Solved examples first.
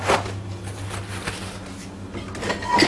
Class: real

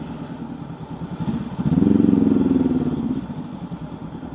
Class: real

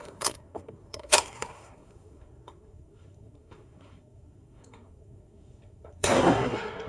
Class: fake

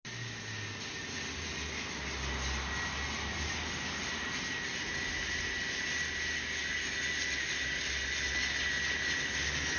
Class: real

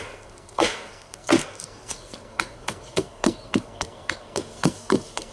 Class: fake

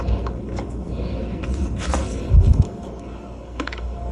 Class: fake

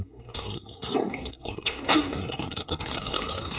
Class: fake